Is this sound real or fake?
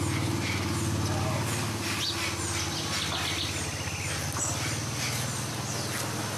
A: real